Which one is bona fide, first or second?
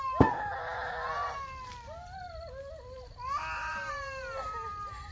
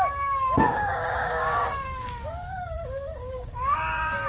first